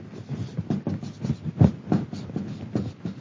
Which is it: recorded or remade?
recorded